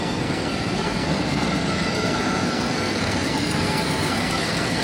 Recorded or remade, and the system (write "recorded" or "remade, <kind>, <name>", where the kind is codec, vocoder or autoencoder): remade, codec, SNAC